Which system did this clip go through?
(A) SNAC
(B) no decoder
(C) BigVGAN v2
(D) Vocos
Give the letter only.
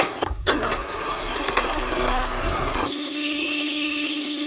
A